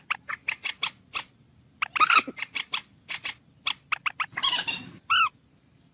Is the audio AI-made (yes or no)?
no